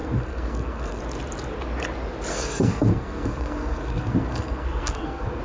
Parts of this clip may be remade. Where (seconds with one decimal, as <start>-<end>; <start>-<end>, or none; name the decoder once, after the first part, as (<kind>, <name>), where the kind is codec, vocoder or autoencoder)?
0.0-1.0 (codec, SNAC); 2.3-5.4